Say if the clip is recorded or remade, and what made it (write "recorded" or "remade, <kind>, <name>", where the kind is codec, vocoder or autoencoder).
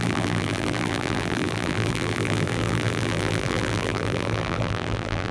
remade, vocoder, BigVGAN v2